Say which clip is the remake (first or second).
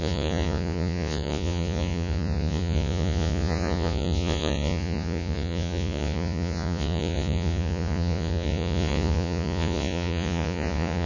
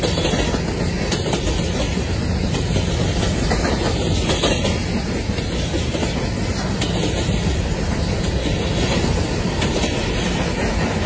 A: first